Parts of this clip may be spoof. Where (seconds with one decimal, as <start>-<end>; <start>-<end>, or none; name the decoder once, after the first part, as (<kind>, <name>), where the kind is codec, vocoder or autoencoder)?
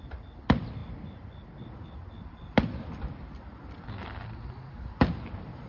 none